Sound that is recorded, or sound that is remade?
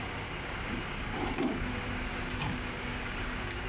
remade